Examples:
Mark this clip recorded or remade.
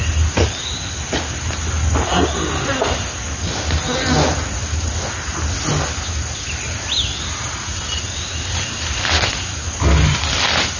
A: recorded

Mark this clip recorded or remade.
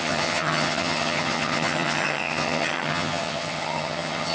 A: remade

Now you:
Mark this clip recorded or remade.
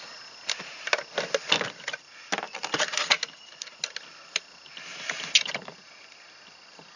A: recorded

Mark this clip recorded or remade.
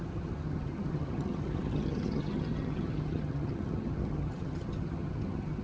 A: remade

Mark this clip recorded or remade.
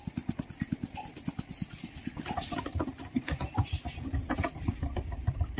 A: recorded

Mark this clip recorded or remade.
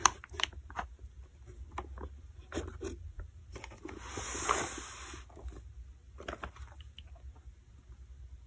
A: recorded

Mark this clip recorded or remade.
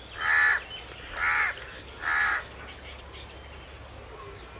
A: recorded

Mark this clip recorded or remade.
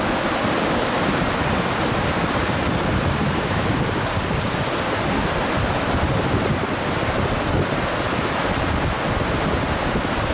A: recorded